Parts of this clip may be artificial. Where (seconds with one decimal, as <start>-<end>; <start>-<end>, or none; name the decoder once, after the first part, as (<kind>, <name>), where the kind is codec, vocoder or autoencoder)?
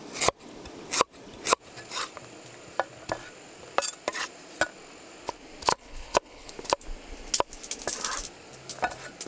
5.7-6.5 (codec, HILCodec)